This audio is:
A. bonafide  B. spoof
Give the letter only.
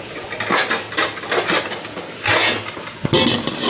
A